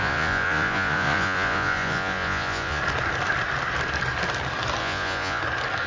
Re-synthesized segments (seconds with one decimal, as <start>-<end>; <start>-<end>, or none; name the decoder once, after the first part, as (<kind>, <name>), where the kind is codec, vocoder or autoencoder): 0.0-2.8 (vocoder, Vocos); 4.8-5.4